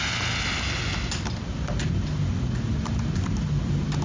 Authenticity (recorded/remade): recorded